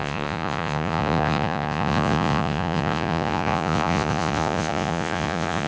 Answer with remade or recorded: remade